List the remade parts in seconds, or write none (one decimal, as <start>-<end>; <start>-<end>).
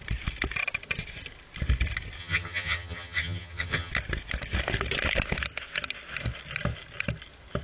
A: 2.2-3.9